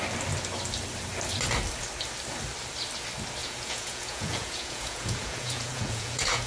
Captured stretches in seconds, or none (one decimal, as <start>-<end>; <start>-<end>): 0.0-3.4